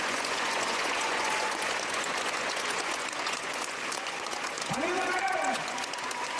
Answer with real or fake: fake